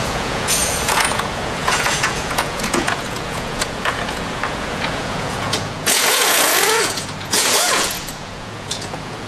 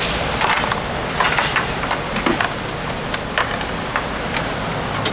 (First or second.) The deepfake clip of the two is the first